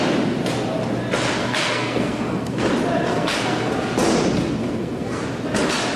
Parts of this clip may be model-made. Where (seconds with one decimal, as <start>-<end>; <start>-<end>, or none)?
1.4-2.7; 3.1-3.7; 4.6-5.2